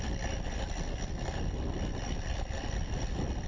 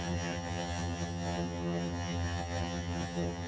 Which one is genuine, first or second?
first